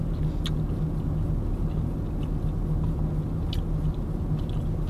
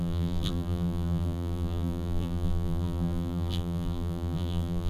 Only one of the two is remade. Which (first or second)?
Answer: second